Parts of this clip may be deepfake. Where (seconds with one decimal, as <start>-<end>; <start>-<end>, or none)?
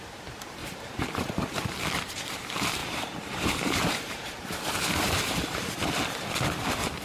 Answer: 0.6-1.2; 2.8-5.3